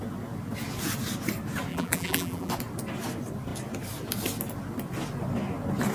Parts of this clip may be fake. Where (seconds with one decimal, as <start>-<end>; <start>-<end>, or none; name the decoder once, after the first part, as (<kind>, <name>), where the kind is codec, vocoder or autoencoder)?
1.7-2.5 (vocoder, BigVGAN v2)